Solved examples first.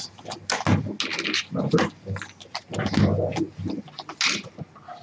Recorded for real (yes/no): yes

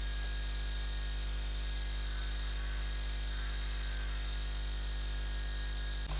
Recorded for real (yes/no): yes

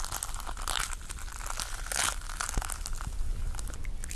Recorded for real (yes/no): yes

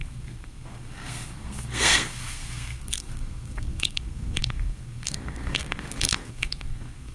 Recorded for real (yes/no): no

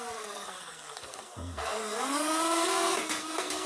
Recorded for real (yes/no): no